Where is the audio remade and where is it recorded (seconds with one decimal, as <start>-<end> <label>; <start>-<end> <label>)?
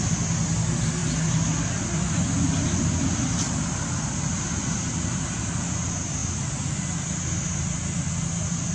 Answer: 0.0-8.7 recorded